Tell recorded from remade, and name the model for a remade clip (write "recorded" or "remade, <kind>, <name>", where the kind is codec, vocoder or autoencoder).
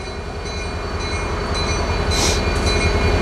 recorded